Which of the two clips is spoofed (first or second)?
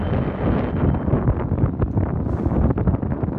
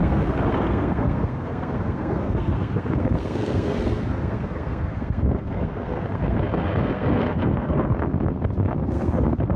second